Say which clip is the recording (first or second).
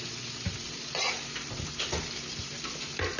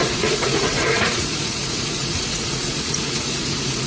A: first